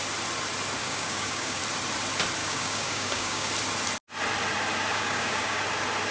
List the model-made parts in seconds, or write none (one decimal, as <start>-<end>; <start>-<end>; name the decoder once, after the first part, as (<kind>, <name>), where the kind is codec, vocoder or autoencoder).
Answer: 0.8-1.6 (codec, DAC); 2.4-3.5; 4.9-5.6